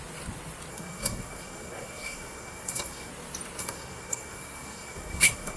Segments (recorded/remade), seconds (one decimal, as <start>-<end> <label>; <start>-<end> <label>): 0.0-0.7 recorded; 0.7-3.1 remade; 3.1-3.6 recorded; 3.6-5.6 remade